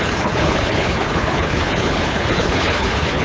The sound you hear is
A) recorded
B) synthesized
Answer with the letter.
B